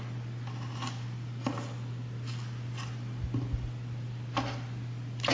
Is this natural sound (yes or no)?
yes